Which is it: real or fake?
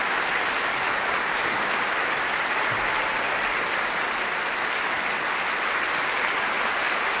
real